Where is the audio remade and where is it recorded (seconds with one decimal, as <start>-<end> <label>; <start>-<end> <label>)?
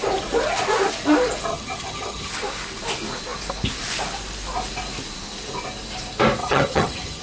0.0-1.5 recorded; 1.5-2.3 remade; 2.3-6.4 recorded; 6.4-7.2 remade